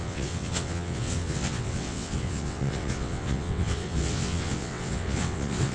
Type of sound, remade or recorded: remade